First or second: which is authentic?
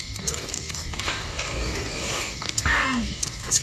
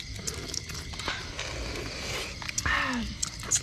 second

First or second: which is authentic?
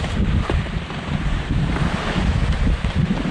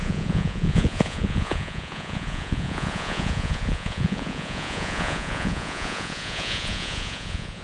first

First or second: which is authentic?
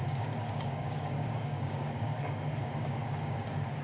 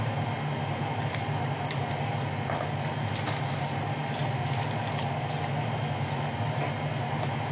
second